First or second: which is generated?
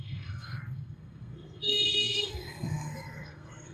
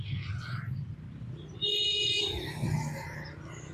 first